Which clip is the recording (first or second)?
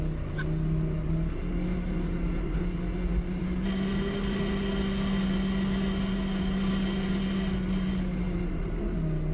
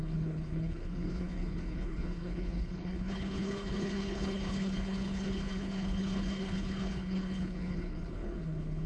first